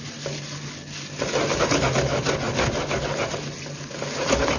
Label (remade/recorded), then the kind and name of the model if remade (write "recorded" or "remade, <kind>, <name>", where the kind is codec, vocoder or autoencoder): recorded